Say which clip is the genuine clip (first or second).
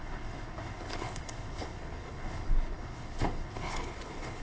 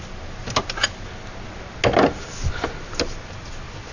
second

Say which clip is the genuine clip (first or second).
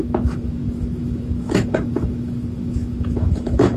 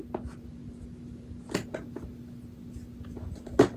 second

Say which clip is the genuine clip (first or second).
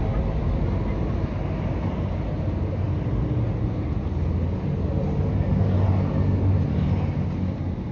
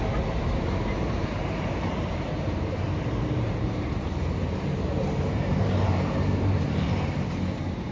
first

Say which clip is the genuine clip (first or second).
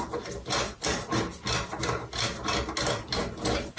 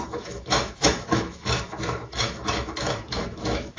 first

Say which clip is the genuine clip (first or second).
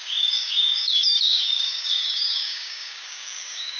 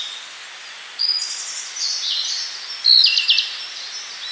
second